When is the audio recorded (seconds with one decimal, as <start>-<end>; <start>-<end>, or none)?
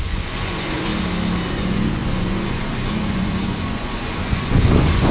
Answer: 0.9-1.5